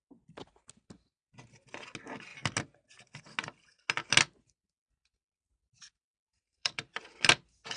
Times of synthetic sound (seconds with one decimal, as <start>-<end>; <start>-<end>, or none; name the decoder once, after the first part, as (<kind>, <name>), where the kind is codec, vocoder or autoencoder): 5.6-7.0 (vocoder, BigVGAN v2)